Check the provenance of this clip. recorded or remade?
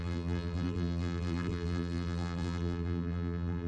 remade